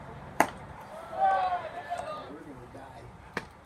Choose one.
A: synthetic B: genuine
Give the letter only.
A